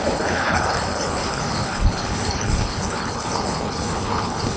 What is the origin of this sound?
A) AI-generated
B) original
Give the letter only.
A